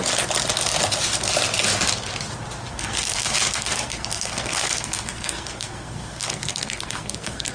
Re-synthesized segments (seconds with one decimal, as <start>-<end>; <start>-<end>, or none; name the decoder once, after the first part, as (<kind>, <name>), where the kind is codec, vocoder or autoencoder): 2.7-7.5 (codec, SNAC)